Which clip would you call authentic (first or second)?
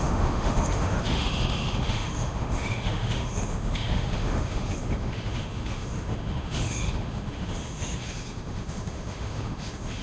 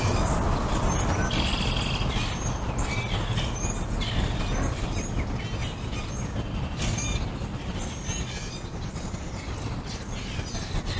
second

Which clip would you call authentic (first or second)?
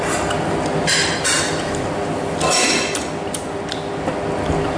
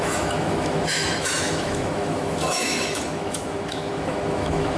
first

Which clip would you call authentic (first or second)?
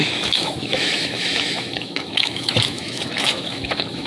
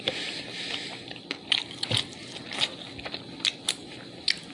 second